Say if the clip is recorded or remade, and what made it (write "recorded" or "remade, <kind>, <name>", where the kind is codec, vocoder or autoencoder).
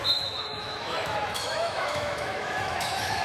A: remade, autoencoder, DAC-VAE